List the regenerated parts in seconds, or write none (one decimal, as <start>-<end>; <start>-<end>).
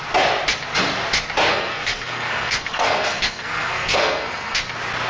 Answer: 1.5-4.6